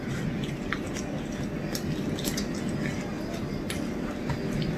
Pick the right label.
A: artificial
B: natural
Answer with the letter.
B